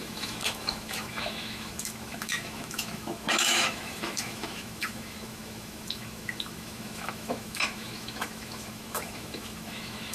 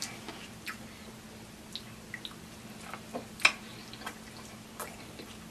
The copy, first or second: first